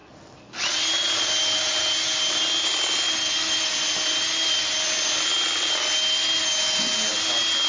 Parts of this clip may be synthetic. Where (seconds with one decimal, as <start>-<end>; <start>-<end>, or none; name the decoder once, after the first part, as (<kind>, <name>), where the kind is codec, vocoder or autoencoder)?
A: none